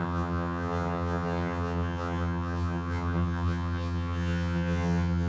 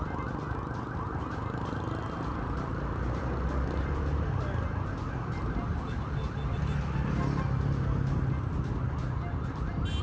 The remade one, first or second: first